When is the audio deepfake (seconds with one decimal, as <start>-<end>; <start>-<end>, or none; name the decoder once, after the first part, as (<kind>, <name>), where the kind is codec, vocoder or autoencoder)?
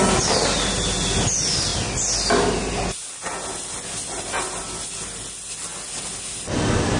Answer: none